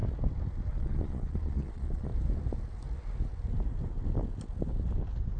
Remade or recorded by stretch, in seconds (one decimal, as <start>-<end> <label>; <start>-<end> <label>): 0.0-0.7 recorded; 0.7-2.1 remade; 2.1-5.4 recorded